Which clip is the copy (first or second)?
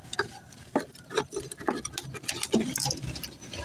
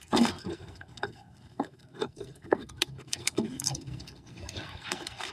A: second